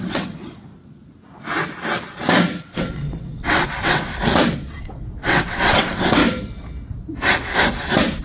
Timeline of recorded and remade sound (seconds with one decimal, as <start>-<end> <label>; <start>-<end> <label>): 0.0-0.7 remade; 0.7-2.6 recorded; 2.6-4.1 remade; 4.1-4.8 recorded; 4.8-6.2 remade; 6.2-8.2 recorded